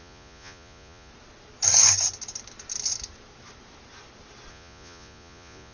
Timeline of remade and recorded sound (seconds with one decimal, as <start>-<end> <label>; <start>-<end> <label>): 0.0-1.1 remade; 1.1-4.5 recorded; 4.5-5.7 remade